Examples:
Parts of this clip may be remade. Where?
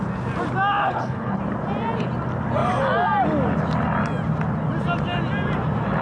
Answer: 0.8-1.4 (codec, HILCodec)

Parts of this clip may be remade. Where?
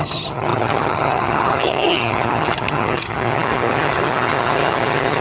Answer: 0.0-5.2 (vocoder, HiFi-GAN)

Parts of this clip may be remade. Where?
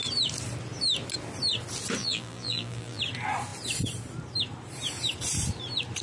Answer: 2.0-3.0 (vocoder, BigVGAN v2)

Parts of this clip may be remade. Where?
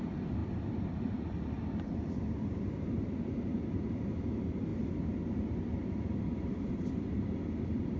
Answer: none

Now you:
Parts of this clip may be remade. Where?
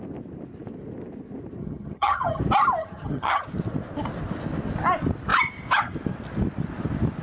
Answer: 1.6-2.4 (vocoder, HiFi-GAN); 2.8-3.4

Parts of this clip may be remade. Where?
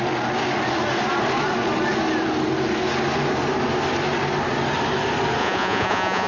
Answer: 5.4-6.3 (vocoder, Vocos)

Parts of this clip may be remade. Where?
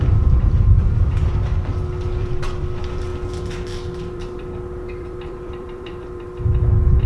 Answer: 0.0-3.1 (vocoder, BigVGAN v2); 4.0-7.1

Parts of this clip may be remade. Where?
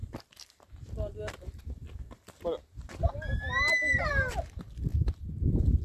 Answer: 4.9-5.8 (vocoder, BigVGAN v2)